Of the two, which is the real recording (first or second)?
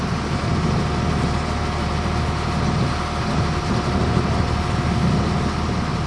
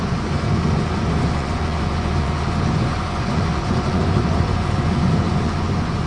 first